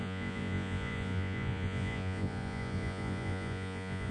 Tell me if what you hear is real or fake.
fake